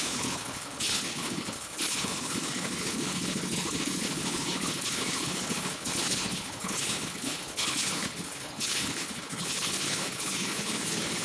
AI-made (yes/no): yes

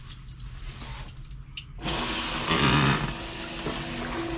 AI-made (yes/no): no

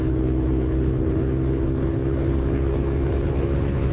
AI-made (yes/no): yes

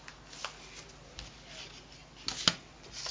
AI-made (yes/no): no